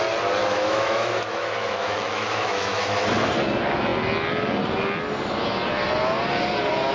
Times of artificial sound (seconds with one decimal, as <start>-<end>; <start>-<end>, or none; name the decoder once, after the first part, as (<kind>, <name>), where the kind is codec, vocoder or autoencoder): 0.4-3.0 (autoencoder, DAC-VAE)